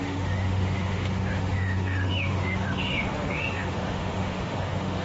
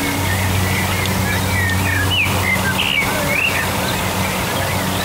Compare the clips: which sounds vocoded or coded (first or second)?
first